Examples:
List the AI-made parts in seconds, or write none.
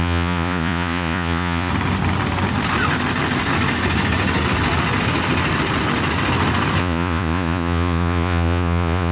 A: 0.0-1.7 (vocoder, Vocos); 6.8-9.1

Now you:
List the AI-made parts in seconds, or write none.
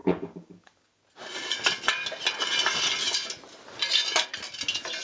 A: 0.0-0.9 (codec, DAC)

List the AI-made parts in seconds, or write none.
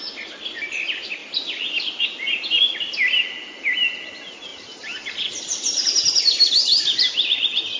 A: 1.2-2.0 (vocoder, BigVGAN v2); 4.5-6.5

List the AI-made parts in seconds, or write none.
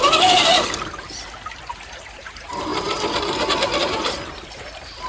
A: 0.0-0.5 (vocoder, BigVGAN v2); 1.7-2.7; 3.8-5.1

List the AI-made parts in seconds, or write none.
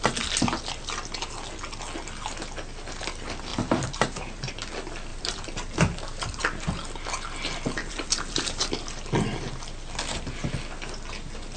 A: 3.5-4.5 (vocoder, BigVGAN v2); 5.1-6.4; 7.8-8.7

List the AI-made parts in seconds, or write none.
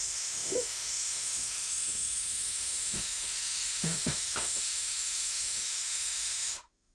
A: 0.0-6.9 (autoencoder, DAC-VAE)